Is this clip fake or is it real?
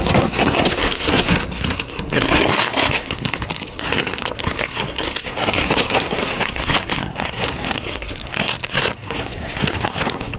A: fake